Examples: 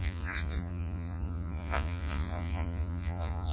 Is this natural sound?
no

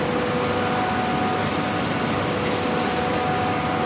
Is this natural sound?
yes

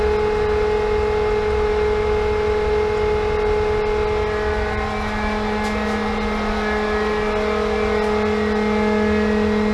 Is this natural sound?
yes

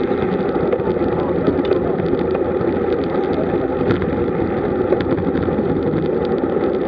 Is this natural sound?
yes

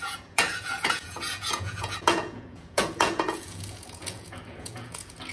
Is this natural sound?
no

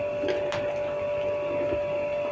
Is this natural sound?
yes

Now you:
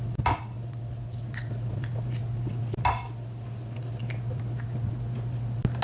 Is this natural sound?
yes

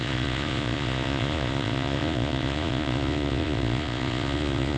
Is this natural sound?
no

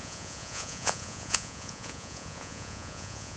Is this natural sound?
no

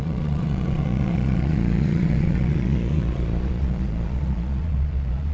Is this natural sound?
no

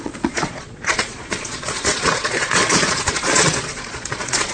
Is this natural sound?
no